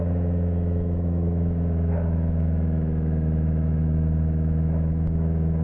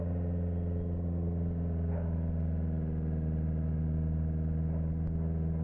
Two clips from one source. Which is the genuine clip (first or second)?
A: second